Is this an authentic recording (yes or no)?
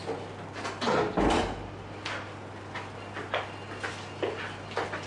yes